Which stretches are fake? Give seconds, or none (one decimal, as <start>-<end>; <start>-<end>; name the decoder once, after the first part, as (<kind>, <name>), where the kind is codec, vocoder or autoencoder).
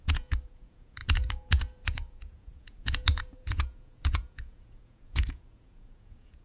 0.0-6.4 (vocoder, Vocos)